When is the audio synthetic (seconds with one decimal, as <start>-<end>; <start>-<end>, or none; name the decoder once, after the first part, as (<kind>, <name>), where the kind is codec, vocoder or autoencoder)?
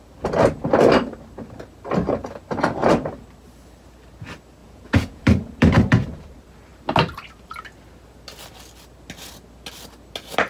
4.6-5.2 (vocoder, Vocos)